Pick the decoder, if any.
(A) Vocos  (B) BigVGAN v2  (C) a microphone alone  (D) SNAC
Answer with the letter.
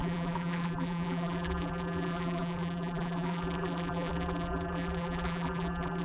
B